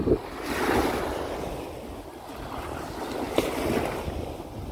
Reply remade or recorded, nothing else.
recorded